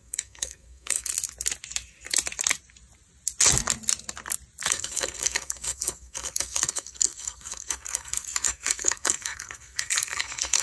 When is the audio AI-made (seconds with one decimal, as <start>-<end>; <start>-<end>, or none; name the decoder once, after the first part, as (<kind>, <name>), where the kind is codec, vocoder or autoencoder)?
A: 0.0-1.1 (codec, SNAC); 4.7-10.6